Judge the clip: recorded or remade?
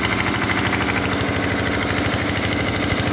recorded